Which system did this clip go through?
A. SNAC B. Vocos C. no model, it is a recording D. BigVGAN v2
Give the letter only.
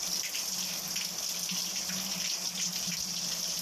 C